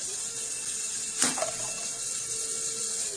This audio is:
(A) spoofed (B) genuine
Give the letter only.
B